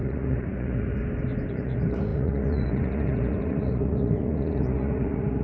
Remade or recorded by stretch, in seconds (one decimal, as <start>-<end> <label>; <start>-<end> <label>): 0.0-1.0 remade; 1.0-1.5 recorded; 1.5-5.4 remade